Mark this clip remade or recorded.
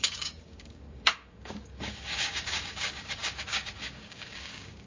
remade